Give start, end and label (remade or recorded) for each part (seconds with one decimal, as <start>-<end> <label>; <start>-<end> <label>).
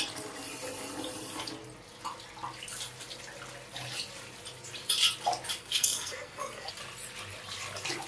0.0-5.6 recorded; 5.6-6.7 remade; 6.7-8.1 recorded